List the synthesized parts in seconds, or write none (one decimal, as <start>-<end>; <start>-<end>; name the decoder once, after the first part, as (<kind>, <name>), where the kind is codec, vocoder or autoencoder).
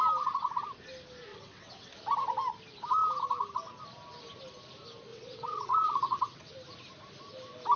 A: 1.3-1.9 (vocoder, WaveNeXt); 5.1-6.5